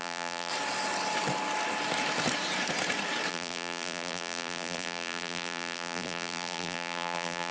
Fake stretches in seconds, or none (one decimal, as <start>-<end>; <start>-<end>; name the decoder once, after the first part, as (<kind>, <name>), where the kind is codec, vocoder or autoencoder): 0.0-0.5 (vocoder, BigVGAN v2); 3.3-7.5